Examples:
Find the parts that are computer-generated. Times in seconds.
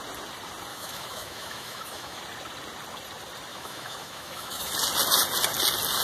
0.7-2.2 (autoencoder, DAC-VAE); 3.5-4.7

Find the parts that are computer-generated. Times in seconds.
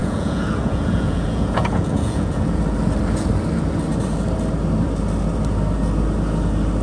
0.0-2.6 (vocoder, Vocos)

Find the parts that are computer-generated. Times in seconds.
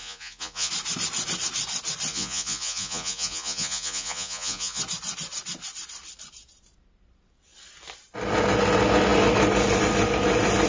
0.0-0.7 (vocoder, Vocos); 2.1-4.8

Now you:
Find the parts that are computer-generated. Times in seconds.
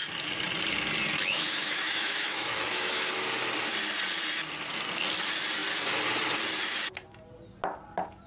1.3-3.0 (autoencoder, DAC-VAE)